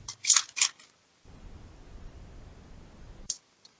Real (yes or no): no